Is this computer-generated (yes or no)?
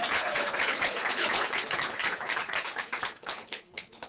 yes